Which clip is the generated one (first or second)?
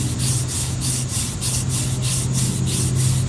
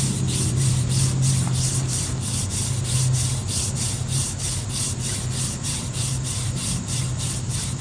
second